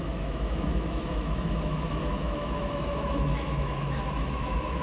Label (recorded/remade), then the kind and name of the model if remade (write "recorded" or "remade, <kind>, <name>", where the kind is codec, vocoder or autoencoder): remade, autoencoder, DAC-VAE